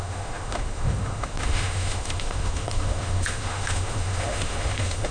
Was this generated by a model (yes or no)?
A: yes